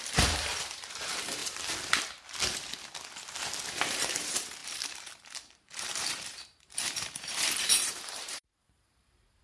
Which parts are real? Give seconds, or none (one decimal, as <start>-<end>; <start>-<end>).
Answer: 1.4-3.7